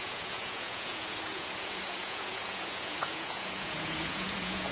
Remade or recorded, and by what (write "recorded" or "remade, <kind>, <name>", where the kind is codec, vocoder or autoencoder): remade, vocoder, Vocos